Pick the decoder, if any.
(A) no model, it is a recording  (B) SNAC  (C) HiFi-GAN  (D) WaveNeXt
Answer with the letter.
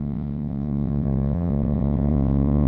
D